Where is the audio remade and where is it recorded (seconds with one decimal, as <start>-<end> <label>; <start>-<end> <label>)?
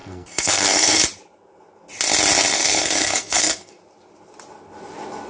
0.0-1.0 remade; 1.0-2.5 recorded; 2.5-3.8 remade; 3.8-5.3 recorded